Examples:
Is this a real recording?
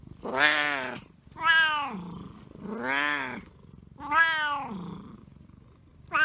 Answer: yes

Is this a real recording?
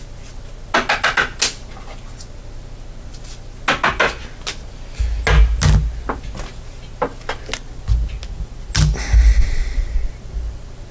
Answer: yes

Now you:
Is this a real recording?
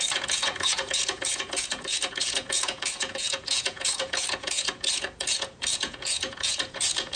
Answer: no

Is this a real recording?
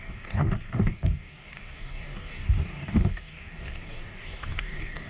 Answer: no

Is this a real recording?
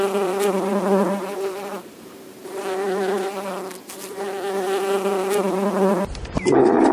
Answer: no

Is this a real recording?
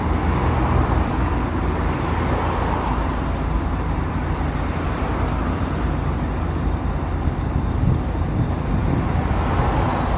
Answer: yes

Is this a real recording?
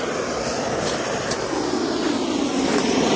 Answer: yes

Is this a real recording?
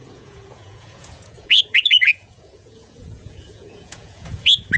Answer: no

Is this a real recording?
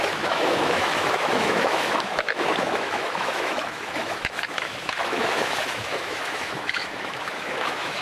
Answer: no